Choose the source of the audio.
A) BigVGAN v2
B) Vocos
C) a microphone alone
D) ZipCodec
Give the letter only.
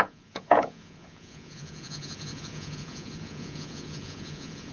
B